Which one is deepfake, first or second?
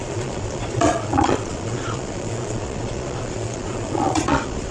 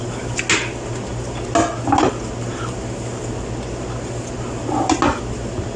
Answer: first